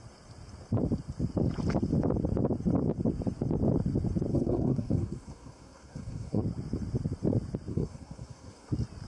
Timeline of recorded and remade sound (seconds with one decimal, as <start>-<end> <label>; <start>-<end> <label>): 0.0-4.3 recorded; 4.3-6.4 remade; 6.4-7.7 recorded; 7.7-8.7 remade; 8.7-9.1 recorded